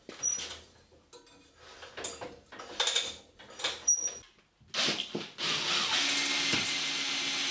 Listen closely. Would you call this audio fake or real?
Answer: real